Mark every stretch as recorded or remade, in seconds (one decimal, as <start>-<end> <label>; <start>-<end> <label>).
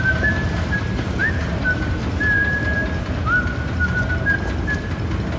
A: 0.0-5.4 recorded